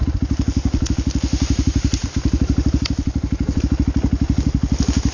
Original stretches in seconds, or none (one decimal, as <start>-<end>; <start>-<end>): 0.0-1.3; 3.6-5.1